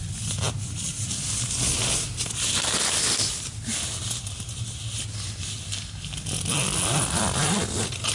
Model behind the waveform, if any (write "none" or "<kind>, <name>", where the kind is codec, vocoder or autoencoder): none